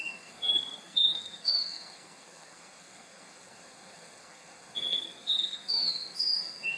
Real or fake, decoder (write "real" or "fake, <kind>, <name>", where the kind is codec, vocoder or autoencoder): fake, codec, SNAC